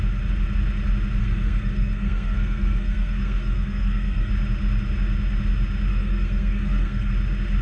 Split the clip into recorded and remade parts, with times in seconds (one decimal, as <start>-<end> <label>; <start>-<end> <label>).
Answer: 0.0-1.2 recorded; 1.2-4.3 remade; 4.3-5.9 recorded; 5.9-7.1 remade; 7.1-7.6 recorded